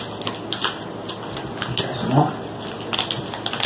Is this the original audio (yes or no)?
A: yes